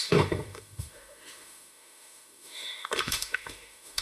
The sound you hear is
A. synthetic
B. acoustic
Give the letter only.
A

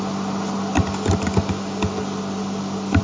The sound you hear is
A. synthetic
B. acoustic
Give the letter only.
B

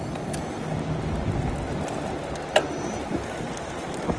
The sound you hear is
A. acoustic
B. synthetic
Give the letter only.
A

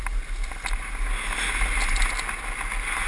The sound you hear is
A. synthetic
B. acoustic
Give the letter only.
B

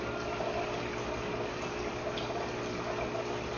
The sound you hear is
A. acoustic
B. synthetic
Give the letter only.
A